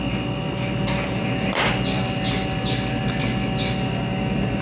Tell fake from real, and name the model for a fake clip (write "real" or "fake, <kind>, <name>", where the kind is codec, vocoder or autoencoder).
real